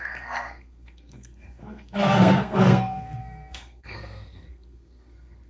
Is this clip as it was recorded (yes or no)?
no